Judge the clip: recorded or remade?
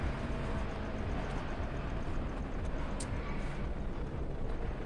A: recorded